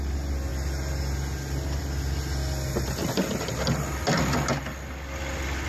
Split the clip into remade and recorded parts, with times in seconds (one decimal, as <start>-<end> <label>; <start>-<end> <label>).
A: 0.0-5.7 recorded